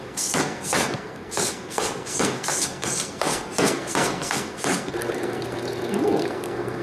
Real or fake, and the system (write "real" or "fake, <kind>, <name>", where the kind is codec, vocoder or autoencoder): fake, codec, SNAC